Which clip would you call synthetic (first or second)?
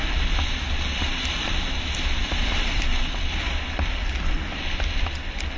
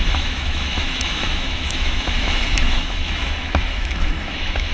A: second